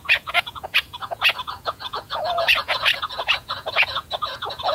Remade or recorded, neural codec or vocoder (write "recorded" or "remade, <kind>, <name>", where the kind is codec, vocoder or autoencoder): remade, vocoder, Vocos